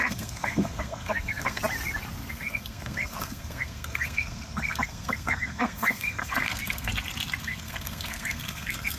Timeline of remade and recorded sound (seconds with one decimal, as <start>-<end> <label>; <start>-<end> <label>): 0.0-1.6 remade; 1.6-2.3 recorded; 2.3-6.9 remade; 6.9-7.4 recorded; 7.4-9.0 remade